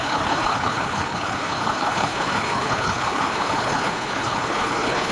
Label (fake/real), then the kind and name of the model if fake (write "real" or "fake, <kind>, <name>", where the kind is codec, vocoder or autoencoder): fake, codec, HILCodec